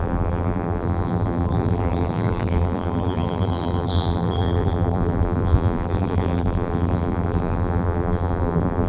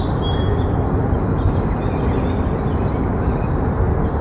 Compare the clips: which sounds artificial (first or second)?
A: first